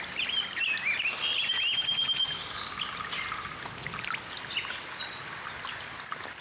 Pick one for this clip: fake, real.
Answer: real